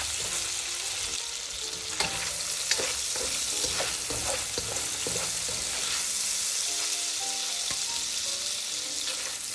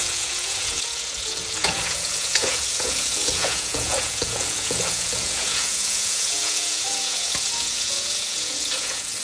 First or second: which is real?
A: first